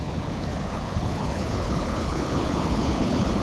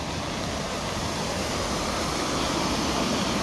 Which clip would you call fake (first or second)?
first